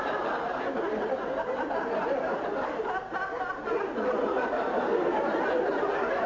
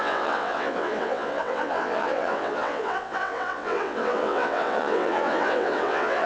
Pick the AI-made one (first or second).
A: second